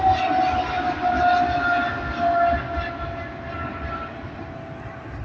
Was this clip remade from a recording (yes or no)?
no